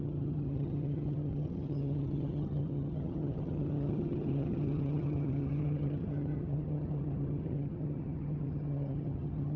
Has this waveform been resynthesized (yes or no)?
yes